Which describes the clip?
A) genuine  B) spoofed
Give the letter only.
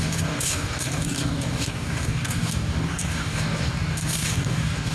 B